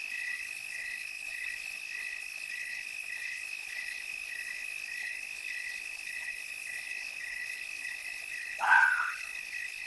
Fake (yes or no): yes